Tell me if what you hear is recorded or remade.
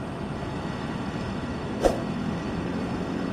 remade